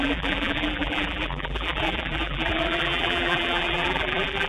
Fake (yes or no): yes